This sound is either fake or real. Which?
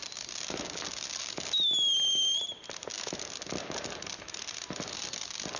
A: real